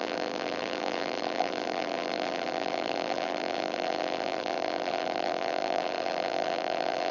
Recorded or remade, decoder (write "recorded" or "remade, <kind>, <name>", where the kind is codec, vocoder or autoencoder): remade, vocoder, BigVGAN v2